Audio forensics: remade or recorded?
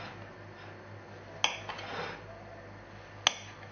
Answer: recorded